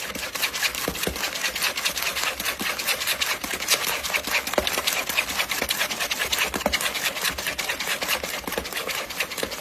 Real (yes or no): no